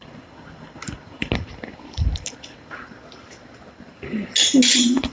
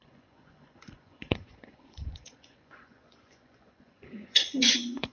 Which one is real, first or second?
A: first